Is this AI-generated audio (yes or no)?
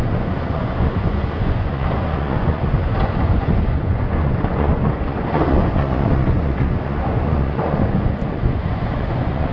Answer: yes